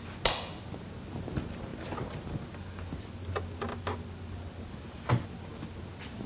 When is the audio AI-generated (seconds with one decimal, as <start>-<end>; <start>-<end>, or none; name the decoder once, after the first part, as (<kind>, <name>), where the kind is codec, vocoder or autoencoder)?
none